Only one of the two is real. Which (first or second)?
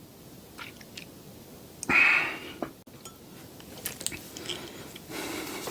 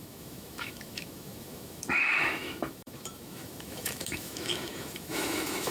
first